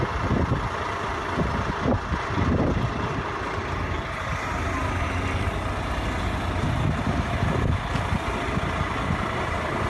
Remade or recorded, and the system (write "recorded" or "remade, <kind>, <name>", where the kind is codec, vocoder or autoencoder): recorded